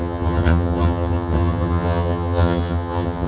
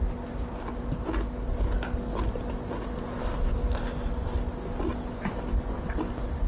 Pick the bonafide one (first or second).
second